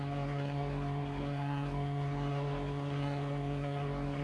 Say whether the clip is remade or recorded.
remade